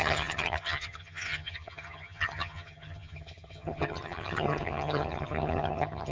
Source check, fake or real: fake